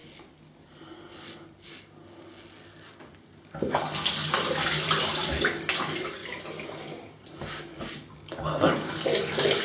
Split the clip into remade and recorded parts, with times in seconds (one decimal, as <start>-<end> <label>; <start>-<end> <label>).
0.0-9.6 recorded